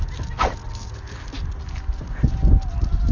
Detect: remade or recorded recorded